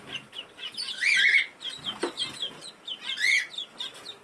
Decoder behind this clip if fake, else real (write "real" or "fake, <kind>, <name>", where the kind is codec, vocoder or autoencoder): real